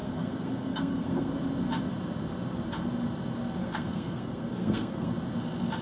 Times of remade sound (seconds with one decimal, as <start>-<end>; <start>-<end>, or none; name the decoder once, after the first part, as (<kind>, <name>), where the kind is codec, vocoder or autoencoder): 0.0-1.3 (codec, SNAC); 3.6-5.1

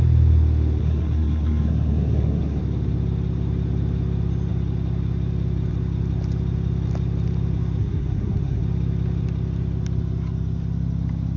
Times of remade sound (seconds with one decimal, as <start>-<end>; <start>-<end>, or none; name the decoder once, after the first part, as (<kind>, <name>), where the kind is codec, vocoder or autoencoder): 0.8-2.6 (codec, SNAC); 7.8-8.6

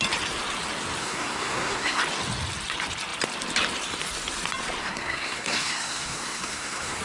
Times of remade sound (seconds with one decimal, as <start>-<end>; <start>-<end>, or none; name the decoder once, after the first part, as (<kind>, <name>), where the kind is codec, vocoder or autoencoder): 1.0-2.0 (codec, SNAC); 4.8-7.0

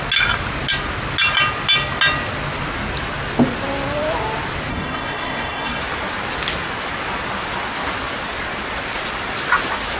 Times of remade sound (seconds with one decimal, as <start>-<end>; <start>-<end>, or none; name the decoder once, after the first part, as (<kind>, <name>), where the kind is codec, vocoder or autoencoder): 4.7-5.8 (codec, SNAC)

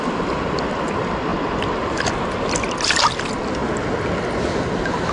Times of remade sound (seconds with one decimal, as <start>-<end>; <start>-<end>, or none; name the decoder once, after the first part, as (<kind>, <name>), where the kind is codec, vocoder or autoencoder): none

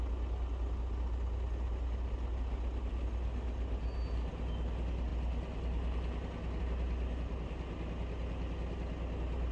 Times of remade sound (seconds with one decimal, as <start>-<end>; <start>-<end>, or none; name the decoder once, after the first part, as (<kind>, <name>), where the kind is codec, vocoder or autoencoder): none